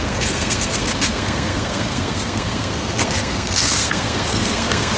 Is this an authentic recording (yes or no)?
no